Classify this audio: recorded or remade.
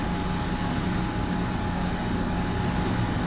recorded